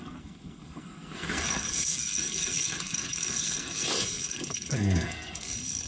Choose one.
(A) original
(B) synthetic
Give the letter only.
B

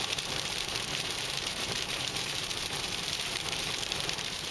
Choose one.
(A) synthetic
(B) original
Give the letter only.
A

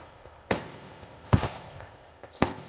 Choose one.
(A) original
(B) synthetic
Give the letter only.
B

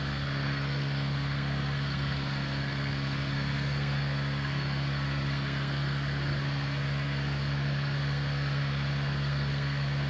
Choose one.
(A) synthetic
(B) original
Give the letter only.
A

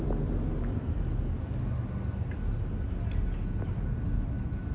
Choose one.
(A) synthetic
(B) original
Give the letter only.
B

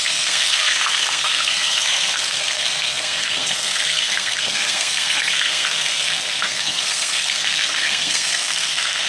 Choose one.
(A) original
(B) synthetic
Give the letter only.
B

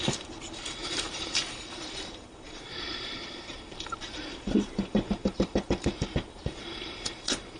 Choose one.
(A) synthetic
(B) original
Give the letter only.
A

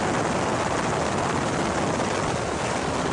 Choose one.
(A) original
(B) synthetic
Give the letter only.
A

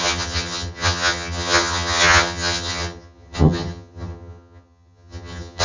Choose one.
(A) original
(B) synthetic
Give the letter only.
B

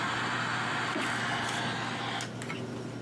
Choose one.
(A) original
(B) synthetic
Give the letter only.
A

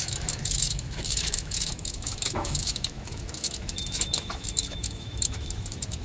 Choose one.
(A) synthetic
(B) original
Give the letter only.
A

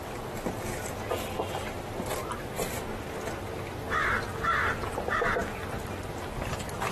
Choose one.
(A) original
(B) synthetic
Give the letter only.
A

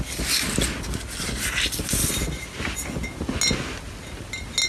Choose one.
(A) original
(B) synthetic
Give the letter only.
A